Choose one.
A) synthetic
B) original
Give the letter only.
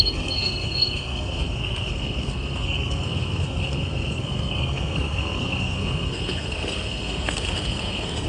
A